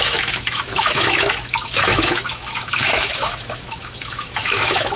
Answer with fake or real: fake